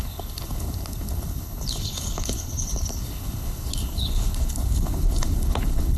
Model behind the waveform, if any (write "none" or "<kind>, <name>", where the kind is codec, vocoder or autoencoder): codec, HILCodec